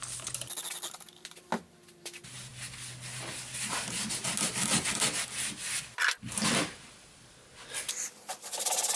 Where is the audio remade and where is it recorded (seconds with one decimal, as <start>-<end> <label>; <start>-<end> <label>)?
0.0-9.0 recorded